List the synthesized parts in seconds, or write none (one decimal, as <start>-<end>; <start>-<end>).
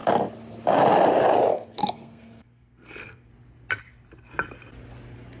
1.5-3.3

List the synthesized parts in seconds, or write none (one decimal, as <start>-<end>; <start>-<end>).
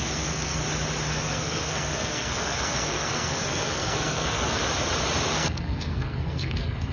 0.0-0.6; 1.1-4.6; 5.3-6.9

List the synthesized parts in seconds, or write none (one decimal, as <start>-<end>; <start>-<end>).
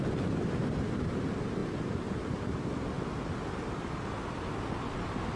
none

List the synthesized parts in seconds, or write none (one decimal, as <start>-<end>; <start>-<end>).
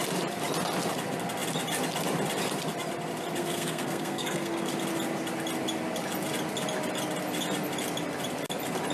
3.4-4.7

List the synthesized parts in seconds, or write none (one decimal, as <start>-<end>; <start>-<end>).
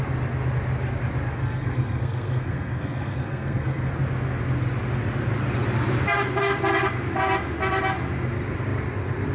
1.4-3.9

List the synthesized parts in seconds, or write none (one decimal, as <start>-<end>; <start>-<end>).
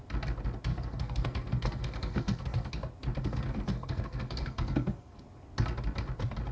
0.7-2.7; 3.2-5.2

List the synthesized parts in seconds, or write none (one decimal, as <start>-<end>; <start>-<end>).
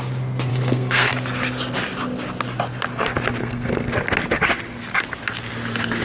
0.5-1.1; 3.4-3.9